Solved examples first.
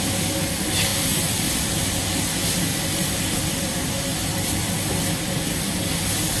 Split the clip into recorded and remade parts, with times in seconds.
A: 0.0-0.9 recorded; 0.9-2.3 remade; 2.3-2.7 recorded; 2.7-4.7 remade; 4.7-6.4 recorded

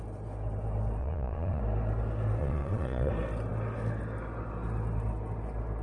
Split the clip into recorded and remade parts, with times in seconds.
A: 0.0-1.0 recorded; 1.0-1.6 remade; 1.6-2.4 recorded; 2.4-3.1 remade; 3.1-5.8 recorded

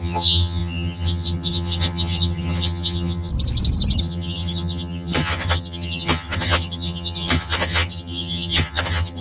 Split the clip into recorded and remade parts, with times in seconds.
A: 0.0-3.3 remade; 3.3-4.0 recorded; 4.0-9.2 remade

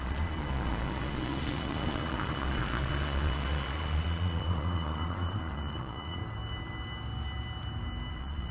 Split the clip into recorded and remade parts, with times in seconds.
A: 0.0-6.2 remade; 6.2-8.1 recorded; 8.1-8.5 remade

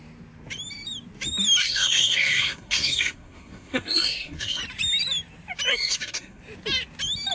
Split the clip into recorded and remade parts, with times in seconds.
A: 0.0-1.6 recorded; 1.6-4.6 remade; 4.6-5.7 recorded; 5.7-6.4 remade; 6.4-7.3 recorded

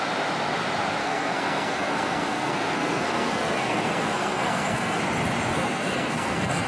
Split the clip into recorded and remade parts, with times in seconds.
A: 0.0-1.0 recorded; 1.0-5.0 remade; 5.0-5.5 recorded; 5.5-6.7 remade

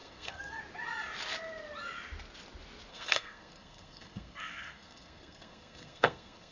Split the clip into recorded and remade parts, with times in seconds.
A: 0.0-0.6 remade; 0.6-2.9 recorded; 2.9-6.5 remade